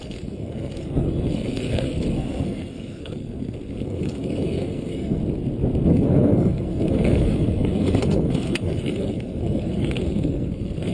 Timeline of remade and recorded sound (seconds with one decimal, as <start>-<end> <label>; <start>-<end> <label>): 0.0-5.2 remade; 5.2-5.9 recorded; 5.9-10.9 remade